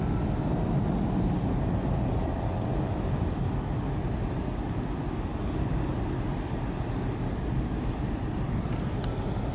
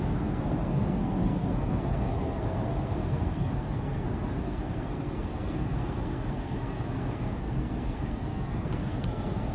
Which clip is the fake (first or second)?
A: second